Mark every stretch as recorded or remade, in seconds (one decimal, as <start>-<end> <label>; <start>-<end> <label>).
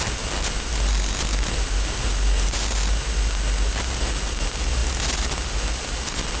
0.0-6.4 recorded